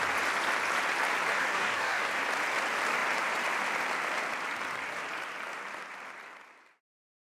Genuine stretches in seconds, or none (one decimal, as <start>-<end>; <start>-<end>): 0.0-1.4; 2.1-7.3